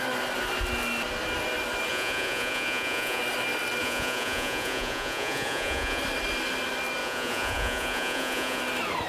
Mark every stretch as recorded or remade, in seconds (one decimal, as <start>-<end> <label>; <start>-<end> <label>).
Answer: 0.0-1.9 recorded; 1.9-3.2 remade; 3.2-3.8 recorded; 3.8-6.0 remade; 6.0-7.0 recorded; 7.0-8.6 remade; 8.6-9.1 recorded